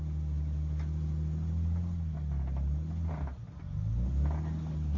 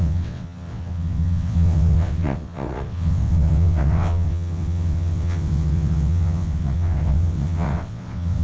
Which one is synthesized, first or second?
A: second